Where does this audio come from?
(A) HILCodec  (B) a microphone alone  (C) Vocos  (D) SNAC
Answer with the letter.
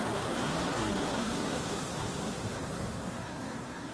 D